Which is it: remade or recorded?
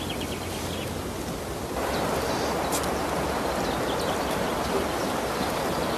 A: recorded